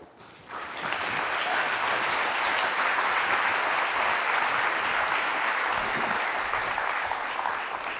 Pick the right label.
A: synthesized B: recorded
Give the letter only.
B